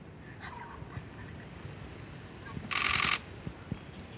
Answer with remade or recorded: recorded